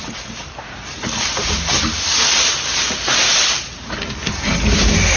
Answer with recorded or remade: recorded